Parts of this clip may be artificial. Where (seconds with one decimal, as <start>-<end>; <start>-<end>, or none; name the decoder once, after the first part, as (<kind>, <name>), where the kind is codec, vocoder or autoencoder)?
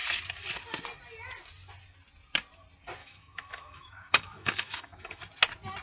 3.0-5.2 (autoencoder, DAC-VAE)